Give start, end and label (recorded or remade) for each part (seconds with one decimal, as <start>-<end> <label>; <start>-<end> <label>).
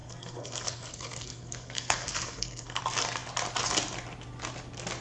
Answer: 0.0-2.8 remade; 2.8-5.0 recorded